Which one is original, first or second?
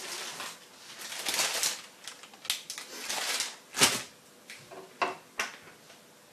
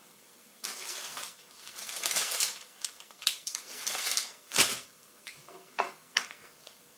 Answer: first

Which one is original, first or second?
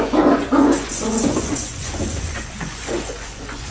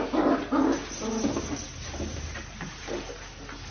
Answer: second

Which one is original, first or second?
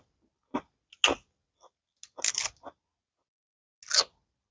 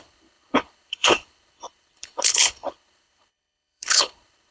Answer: first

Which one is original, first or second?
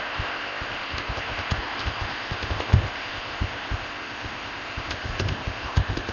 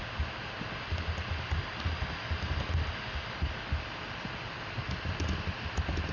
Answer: second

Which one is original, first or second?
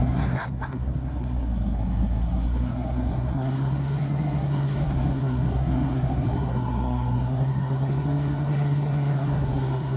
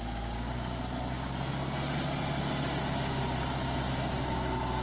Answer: second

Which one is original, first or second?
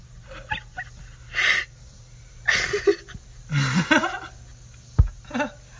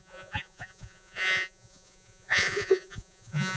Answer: first